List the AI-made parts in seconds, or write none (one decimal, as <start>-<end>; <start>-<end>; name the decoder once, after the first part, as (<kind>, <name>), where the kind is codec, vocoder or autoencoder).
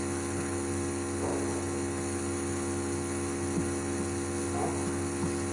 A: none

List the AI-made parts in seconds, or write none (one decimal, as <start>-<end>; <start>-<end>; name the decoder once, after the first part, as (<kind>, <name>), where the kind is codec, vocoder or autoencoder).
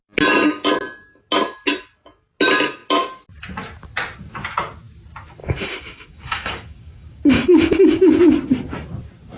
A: 5.4-8.2 (codec, DAC)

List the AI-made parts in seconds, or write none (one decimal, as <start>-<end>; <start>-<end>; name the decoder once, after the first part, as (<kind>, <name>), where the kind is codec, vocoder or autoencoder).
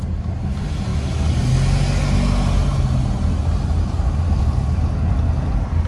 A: none